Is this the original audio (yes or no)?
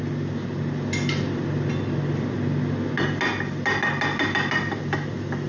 yes